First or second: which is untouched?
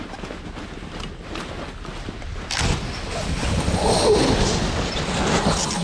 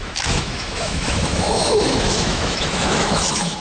first